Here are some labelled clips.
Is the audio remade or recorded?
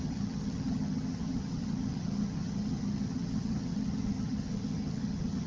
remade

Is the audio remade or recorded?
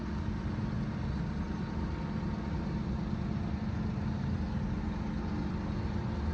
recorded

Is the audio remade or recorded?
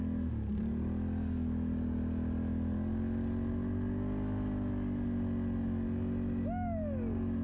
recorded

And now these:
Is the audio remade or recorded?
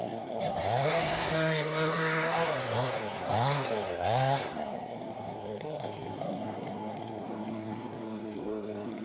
remade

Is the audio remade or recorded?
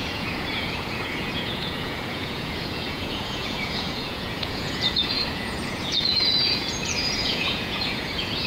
remade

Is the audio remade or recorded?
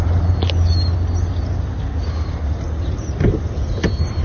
recorded